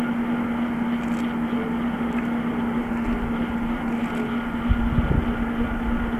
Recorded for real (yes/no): yes